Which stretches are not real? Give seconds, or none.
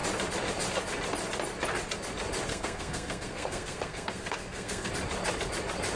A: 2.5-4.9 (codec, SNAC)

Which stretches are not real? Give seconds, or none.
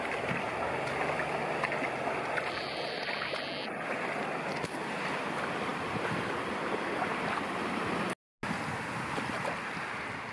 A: none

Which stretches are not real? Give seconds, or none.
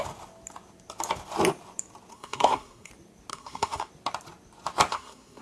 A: 2.1-2.9 (codec, SNAC); 3.3-3.9; 4.9-5.4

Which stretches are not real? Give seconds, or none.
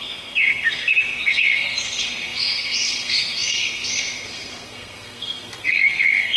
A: 0.0-6.4 (codec, SNAC)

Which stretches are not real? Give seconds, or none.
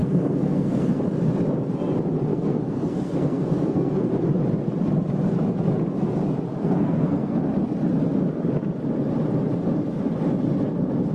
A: 0.0-1.0 (codec, SNAC); 2.3-4.1; 6.6-7.4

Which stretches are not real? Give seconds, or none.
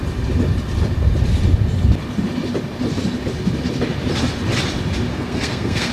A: 5.1-5.9 (codec, SNAC)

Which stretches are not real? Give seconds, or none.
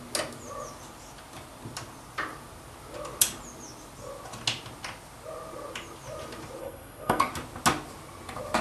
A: 6.6-7.3 (codec, SNAC)